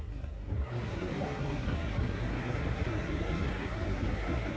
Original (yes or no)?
no